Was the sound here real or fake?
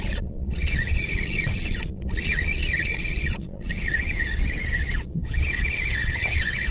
fake